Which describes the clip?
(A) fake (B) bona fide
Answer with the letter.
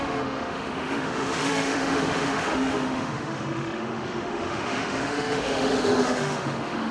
A